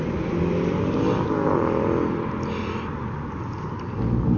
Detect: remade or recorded recorded